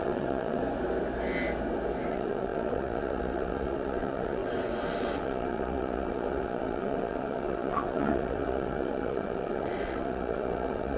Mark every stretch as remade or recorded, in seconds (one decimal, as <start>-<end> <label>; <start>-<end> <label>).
0.0-0.6 remade; 0.6-2.1 recorded; 2.1-11.0 remade